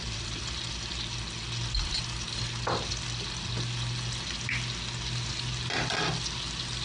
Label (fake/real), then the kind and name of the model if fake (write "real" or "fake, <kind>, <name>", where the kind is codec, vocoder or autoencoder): real